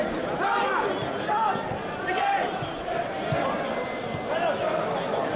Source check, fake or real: real